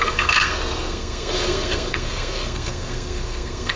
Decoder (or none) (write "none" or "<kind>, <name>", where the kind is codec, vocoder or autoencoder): codec, SNAC